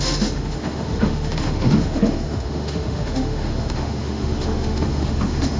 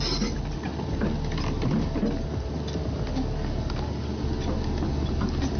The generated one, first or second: first